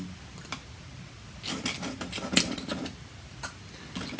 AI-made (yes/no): no